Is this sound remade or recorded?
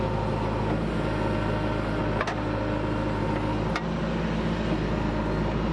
recorded